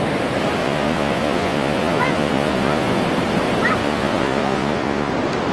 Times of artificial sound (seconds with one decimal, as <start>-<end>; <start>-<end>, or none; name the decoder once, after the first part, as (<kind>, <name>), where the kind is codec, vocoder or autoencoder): 0.6-3.0 (vocoder, Vocos); 3.8-5.1